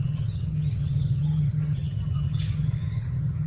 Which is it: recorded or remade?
remade